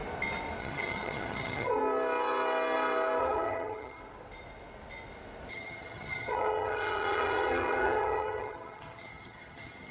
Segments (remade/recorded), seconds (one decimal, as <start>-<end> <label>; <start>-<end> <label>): 0.0-0.6 recorded; 0.6-1.8 remade; 1.8-3.2 recorded; 3.2-4.0 remade; 4.0-5.5 recorded; 5.5-9.9 remade